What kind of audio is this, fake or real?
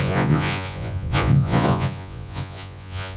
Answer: fake